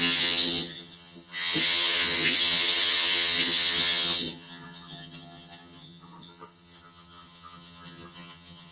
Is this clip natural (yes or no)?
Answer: no